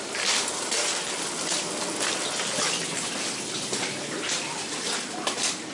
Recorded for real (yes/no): yes